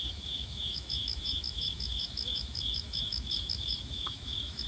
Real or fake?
fake